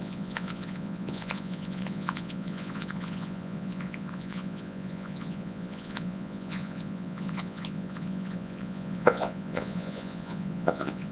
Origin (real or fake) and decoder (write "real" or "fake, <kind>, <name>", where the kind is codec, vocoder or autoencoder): fake, vocoder, Vocos